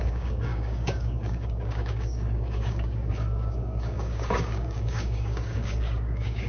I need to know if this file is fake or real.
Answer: fake